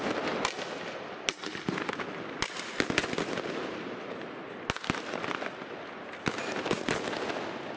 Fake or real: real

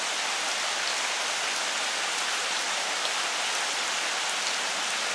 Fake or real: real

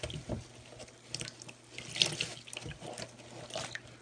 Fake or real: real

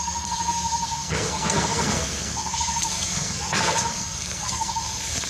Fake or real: fake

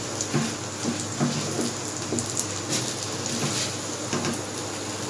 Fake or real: real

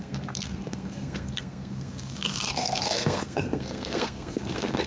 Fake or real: fake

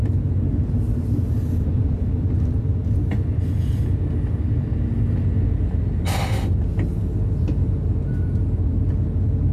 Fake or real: real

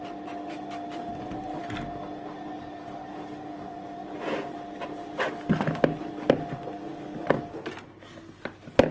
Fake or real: real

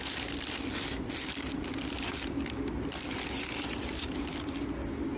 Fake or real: real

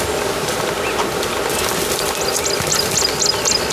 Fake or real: real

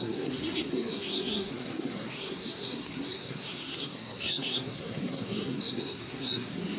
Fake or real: fake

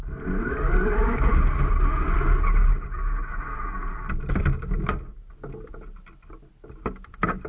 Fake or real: real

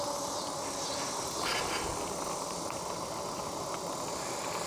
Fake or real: real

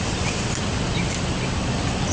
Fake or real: real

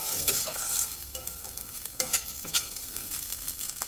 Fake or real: fake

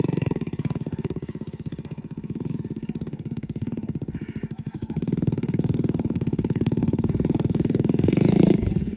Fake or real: fake